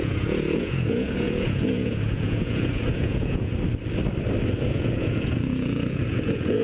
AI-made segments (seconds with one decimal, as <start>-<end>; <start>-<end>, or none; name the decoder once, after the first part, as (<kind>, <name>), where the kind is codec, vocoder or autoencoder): 0.0-3.5 (vocoder, Vocos); 4.6-6.6